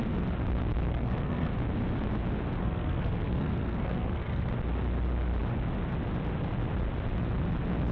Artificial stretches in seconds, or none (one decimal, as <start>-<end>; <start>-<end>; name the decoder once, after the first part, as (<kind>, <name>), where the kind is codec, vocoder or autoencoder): 0.9-1.5 (codec, SNAC); 2.6-4.5